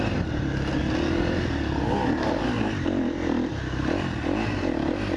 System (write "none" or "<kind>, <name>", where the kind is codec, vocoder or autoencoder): none